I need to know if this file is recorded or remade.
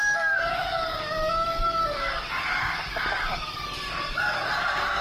remade